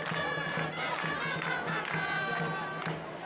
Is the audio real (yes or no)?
yes